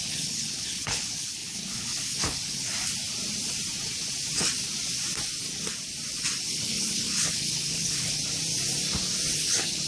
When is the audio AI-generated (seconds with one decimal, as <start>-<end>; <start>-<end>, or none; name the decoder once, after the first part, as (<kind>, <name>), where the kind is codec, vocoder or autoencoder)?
0.0-2.7 (codec, HILCodec); 6.5-8.2; 9.4-9.9